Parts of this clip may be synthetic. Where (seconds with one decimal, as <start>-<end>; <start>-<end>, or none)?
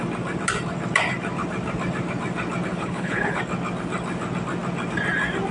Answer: 2.7-3.4